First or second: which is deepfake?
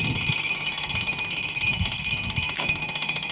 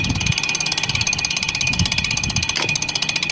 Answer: first